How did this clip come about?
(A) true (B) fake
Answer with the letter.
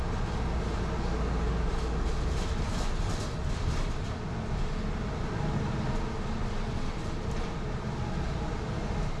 A